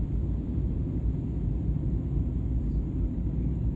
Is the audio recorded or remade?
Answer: recorded